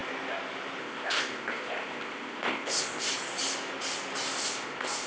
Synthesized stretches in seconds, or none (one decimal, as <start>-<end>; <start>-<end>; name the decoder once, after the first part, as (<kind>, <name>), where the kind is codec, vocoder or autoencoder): 0.8-3.1 (codec, ZipCodec); 4.4-5.1